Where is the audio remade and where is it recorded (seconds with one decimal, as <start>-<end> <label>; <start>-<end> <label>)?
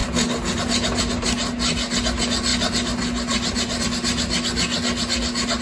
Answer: 0.0-5.6 recorded